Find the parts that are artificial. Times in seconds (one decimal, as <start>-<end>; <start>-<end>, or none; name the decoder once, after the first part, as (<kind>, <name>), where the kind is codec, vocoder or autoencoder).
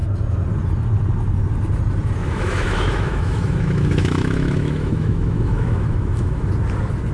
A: 2.2-6.5 (autoencoder, DAC-VAE)